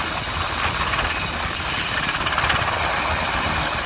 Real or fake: real